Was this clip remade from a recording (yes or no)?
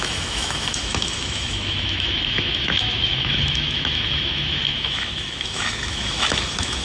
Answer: yes